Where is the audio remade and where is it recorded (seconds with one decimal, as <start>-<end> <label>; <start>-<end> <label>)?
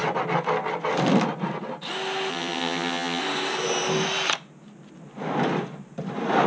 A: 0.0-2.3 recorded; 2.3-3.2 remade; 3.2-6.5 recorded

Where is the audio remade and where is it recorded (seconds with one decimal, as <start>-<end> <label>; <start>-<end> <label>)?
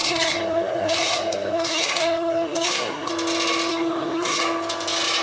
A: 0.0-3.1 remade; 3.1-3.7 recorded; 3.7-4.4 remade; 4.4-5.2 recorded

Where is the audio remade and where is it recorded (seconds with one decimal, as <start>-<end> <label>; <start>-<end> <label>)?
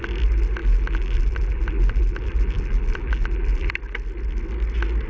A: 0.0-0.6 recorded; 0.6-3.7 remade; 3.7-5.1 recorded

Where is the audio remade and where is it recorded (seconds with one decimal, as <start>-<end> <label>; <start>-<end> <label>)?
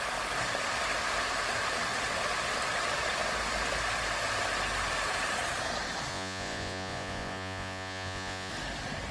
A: 0.0-6.1 recorded; 6.1-8.5 remade; 8.5-9.1 recorded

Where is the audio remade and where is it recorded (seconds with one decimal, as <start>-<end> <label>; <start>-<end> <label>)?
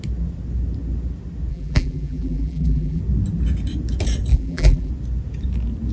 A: 0.0-1.5 recorded; 1.5-3.0 remade; 3.0-4.3 recorded; 4.3-4.9 remade; 4.9-5.9 recorded